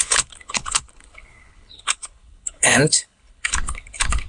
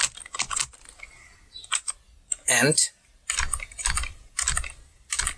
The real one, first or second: second